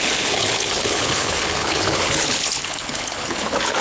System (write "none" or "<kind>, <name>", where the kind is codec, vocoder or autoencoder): codec, HILCodec